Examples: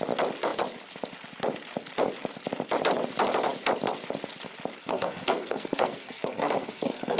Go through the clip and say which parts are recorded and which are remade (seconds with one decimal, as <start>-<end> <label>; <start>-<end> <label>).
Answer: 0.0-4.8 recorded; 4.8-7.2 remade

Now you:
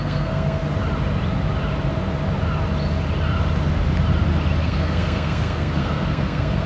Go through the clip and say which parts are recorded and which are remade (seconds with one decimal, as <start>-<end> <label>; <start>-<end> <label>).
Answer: 0.0-0.6 remade; 0.6-4.6 recorded; 4.6-6.7 remade

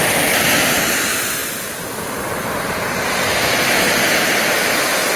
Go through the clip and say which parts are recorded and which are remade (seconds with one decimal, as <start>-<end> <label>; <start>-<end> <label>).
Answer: 0.0-5.2 recorded

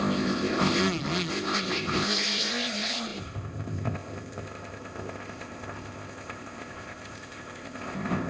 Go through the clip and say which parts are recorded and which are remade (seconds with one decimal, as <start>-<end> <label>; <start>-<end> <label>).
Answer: 0.0-0.8 remade; 0.8-1.3 recorded; 1.3-8.3 remade